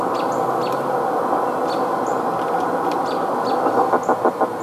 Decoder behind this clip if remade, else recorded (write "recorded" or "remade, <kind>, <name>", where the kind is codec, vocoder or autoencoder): recorded